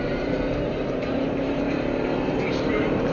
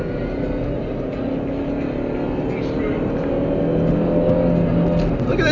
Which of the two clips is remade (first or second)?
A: first